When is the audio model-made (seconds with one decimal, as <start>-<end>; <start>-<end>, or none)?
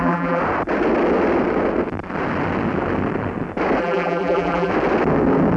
0.0-0.4; 3.8-4.7